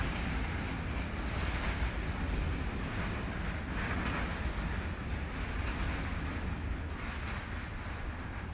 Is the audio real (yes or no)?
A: yes